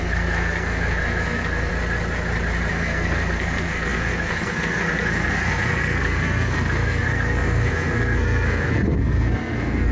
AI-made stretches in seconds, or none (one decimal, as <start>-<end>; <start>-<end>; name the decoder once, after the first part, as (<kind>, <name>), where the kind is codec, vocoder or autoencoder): 0.0-1.7 (codec, SNAC); 2.7-9.9